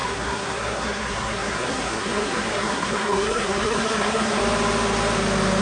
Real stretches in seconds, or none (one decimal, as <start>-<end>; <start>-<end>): 4.4-5.6